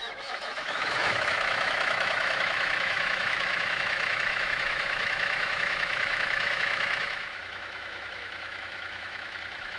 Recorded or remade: remade